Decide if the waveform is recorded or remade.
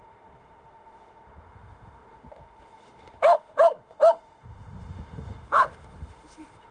remade